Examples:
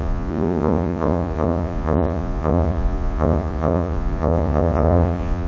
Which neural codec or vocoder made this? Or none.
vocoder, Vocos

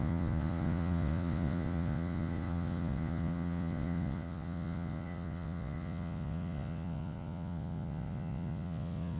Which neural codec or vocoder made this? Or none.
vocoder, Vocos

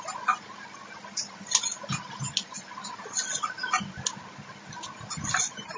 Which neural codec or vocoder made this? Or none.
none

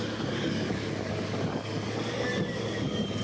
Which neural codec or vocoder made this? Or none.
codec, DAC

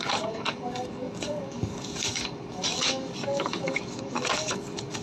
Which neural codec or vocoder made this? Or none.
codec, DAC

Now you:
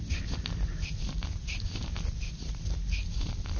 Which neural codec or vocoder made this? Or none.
none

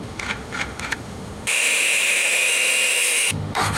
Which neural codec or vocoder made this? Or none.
autoencoder, DAC-VAE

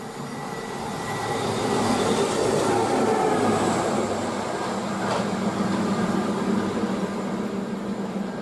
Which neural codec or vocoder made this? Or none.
none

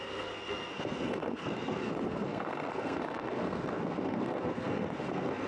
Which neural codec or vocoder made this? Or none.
codec, SNAC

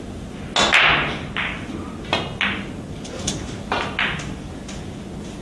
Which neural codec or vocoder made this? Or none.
none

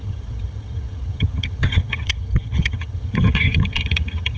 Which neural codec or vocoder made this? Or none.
vocoder, HiFi-GAN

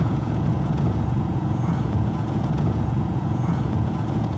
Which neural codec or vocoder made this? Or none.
vocoder, Vocos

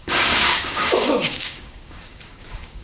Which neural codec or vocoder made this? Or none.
codec, DAC